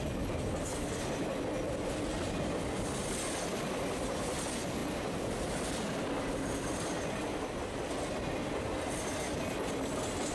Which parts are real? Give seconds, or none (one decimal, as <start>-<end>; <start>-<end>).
0.0-10.3